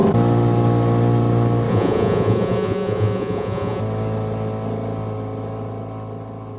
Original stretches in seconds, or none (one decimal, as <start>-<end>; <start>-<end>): 0.0-1.7; 3.8-6.6